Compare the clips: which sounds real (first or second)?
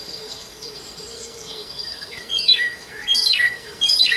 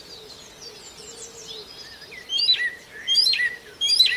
second